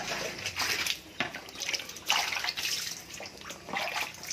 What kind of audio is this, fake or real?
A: real